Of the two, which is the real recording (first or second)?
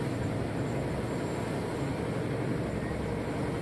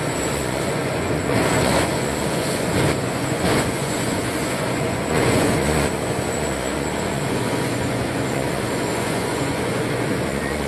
first